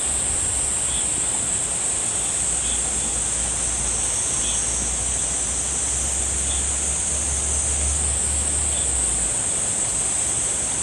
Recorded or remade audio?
recorded